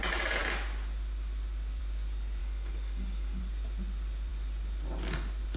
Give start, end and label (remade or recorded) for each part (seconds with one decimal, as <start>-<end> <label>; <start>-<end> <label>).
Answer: 0.0-2.4 recorded; 2.4-3.4 remade; 3.4-5.6 recorded